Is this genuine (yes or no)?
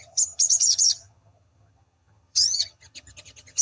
no